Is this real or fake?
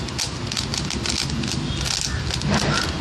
real